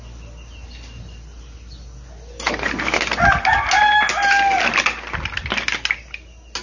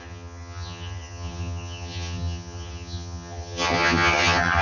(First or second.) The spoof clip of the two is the second